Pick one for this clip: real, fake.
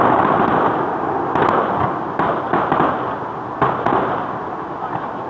real